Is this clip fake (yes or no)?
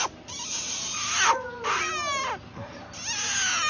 no